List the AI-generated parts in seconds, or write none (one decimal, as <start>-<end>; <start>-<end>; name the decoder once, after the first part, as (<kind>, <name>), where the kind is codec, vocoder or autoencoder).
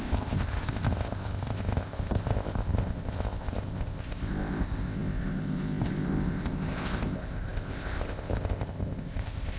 0.0-9.6 (codec, ZipCodec)